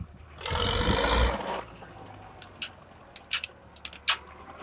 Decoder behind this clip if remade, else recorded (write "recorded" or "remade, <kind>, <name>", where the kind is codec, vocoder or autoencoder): recorded